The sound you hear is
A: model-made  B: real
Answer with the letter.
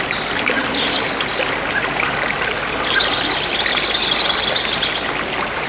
B